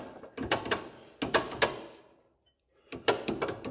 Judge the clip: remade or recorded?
recorded